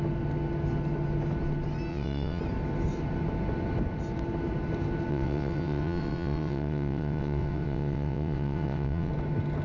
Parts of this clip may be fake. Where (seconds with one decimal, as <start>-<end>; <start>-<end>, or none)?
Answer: 1.9-2.4; 5.1-9.1